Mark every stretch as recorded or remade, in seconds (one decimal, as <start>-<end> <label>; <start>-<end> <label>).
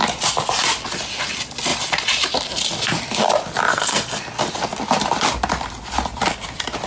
0.0-3.7 recorded; 3.7-4.2 remade; 4.2-6.9 recorded